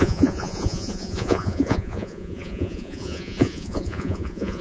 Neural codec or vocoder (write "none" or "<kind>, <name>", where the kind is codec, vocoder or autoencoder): vocoder, Vocos